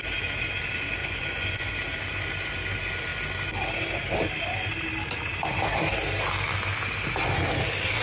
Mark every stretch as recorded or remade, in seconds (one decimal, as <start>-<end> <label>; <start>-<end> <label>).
0.0-1.0 recorded; 1.0-1.7 remade; 1.7-8.0 recorded